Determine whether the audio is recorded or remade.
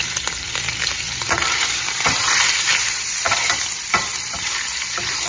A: remade